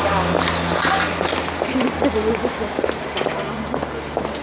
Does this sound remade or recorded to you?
recorded